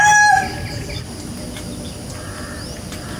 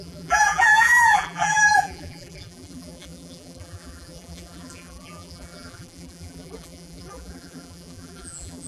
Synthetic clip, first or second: second